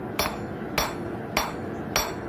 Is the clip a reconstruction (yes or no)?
no